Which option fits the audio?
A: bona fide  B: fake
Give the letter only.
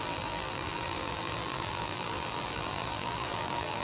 B